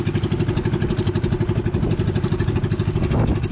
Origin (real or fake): real